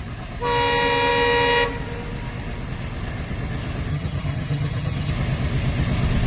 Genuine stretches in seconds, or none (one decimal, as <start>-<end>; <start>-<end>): 0.0-3.9; 5.1-6.3